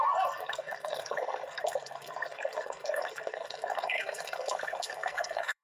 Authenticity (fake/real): fake